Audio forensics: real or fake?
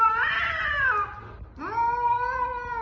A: real